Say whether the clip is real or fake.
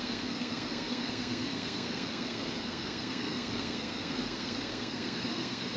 fake